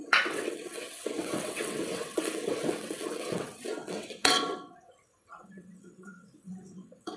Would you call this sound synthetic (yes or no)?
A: yes